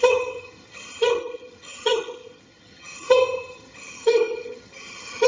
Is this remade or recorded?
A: remade